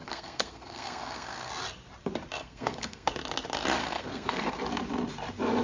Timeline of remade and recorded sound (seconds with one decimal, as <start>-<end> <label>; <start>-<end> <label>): 0.0-1.5 remade; 1.5-2.4 recorded; 2.4-3.1 remade; 3.1-3.8 recorded; 3.8-4.5 remade; 4.5-5.6 recorded